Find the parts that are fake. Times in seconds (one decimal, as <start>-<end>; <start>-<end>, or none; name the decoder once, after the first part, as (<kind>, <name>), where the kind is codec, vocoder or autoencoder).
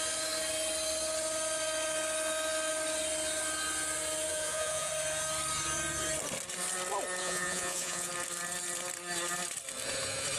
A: 4.3-4.9 (vocoder, Vocos); 7.2-8.1